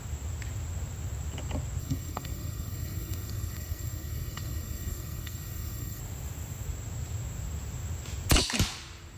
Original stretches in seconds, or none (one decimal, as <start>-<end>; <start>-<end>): 0.0-1.8; 6.0-9.2